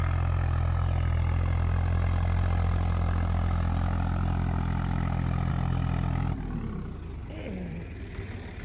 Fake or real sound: real